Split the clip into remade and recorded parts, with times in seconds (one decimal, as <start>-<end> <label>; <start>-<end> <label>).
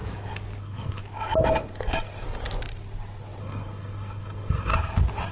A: 0.0-0.6 recorded; 0.6-1.0 remade; 1.0-3.4 recorded; 3.4-4.7 remade; 4.7-5.3 recorded